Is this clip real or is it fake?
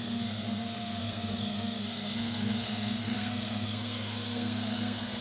fake